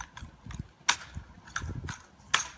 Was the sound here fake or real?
real